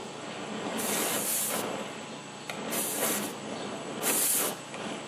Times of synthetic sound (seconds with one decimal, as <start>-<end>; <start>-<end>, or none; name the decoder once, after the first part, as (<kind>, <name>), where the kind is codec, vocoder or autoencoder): none

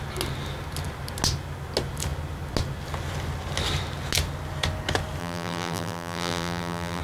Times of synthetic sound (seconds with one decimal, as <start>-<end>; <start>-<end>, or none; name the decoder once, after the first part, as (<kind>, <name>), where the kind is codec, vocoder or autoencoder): 5.2-7.0 (vocoder, BigVGAN v2)